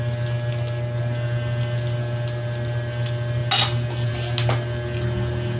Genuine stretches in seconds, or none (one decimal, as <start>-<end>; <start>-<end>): 0.0-5.6

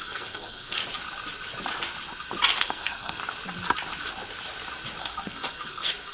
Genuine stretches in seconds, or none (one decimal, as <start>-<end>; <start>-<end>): 0.8-2.6; 3.2-5.0

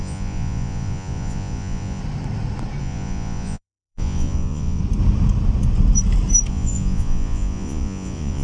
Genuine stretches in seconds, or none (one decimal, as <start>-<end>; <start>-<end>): 2.0-2.8; 4.8-6.5

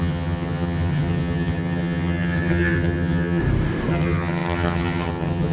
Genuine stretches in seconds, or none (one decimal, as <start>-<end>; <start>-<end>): 3.4-3.9

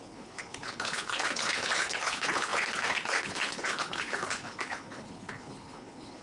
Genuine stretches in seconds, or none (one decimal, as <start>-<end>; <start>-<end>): none

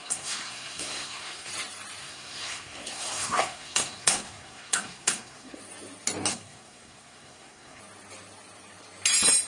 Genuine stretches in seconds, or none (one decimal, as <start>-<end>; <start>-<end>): 1.5-2.0; 5.6-6.3; 7.8-9.5

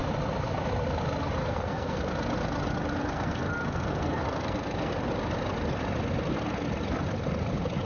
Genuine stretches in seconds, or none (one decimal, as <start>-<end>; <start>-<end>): 0.0-1.4; 2.0-3.0; 4.9-7.9